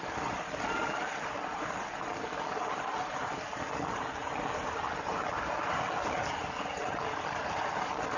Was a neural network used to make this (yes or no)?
no